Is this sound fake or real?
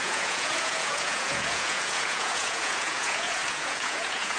fake